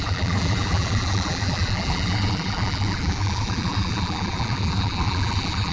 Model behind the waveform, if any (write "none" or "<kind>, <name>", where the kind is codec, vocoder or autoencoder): vocoder, BigVGAN v2